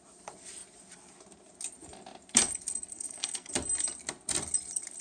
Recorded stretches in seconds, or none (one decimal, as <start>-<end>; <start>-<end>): 0.0-2.9; 3.5-5.0